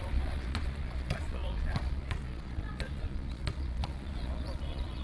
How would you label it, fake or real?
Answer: fake